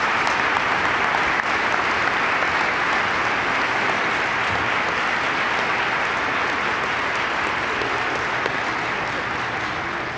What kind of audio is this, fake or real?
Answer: real